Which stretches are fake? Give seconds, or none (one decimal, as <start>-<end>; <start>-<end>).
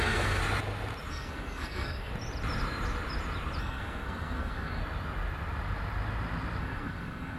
0.0-0.4; 1.1-2.1; 3.6-4.8; 6.6-7.4